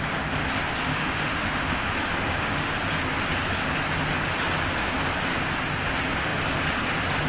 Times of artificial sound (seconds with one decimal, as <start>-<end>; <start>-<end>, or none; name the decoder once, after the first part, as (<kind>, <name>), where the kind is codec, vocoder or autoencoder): 0.9-2.7 (autoencoder, DAC-VAE)